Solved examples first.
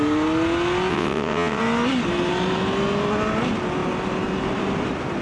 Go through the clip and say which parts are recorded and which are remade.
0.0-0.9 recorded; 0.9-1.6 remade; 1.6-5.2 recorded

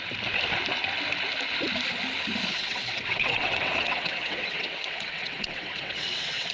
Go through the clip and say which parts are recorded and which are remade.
0.0-2.5 recorded; 2.5-6.5 remade

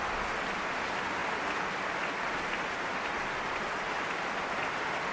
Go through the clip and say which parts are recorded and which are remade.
0.0-5.1 recorded

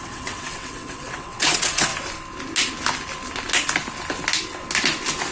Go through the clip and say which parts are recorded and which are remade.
0.0-1.9 remade; 1.9-5.3 recorded

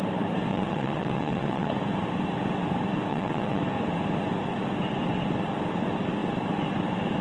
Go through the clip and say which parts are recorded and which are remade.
0.0-0.5 recorded; 0.5-1.7 remade; 1.7-3.1 recorded; 3.1-3.6 remade; 3.6-7.2 recorded

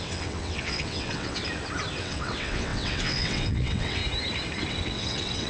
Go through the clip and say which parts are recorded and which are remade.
0.0-1.4 remade; 1.4-2.0 recorded; 2.0-4.0 remade; 4.0-4.7 recorded; 4.7-5.5 remade

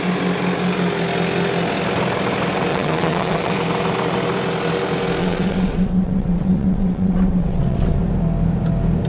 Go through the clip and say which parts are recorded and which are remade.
0.0-2.7 recorded; 2.7-3.5 remade; 3.5-5.2 recorded; 5.2-8.0 remade; 8.0-9.1 recorded

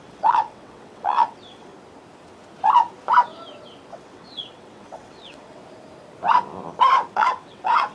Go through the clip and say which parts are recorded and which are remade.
0.0-1.7 remade; 1.7-3.9 recorded; 3.9-5.6 remade; 5.6-7.1 recorded; 7.1-7.9 remade